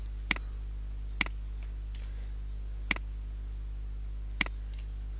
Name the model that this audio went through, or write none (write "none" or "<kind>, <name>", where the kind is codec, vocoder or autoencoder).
none